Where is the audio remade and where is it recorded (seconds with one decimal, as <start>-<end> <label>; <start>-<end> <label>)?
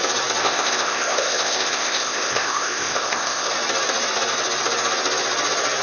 0.0-0.4 recorded; 0.4-3.5 remade; 3.5-5.8 recorded